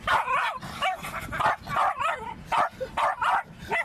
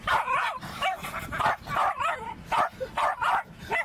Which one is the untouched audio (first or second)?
first